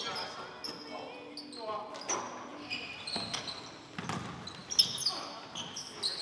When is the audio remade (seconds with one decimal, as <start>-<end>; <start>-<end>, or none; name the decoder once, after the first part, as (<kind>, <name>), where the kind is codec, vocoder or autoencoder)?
none

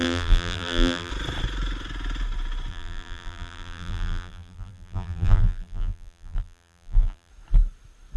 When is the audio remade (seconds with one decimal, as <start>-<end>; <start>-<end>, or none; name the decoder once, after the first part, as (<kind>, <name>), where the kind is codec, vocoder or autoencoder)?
0.0-1.1 (vocoder, BigVGAN v2); 2.7-7.3

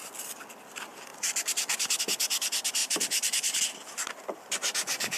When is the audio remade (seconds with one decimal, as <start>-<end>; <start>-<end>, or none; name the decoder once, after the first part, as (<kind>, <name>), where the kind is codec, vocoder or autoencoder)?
2.8-3.6 (vocoder, BigVGAN v2)

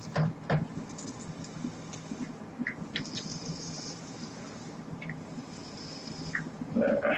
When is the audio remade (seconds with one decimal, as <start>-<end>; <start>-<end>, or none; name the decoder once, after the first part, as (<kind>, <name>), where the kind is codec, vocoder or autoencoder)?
3.4-6.0 (vocoder, BigVGAN v2)

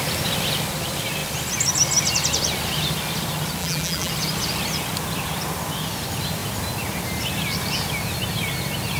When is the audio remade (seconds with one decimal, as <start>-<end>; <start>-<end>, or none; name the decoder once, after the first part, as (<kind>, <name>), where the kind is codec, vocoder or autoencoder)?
3.6-4.1 (vocoder, BigVGAN v2)

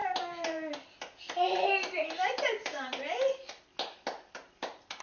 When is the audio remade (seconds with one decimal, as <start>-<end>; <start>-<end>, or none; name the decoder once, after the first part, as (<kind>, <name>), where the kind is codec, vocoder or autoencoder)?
0.0-1.3 (vocoder, BigVGAN v2); 2.7-3.4

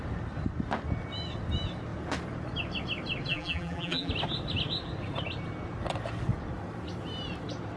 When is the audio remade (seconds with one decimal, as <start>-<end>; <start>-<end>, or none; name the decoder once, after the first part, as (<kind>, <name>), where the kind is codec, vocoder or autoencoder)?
3.3-4.1 (vocoder, BigVGAN v2)